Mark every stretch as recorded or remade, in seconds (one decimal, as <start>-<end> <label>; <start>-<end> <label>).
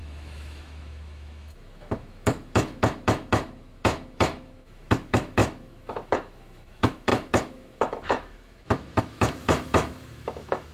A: 0.0-10.7 remade